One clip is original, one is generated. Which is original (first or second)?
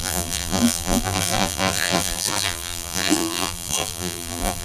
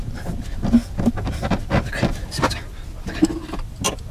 second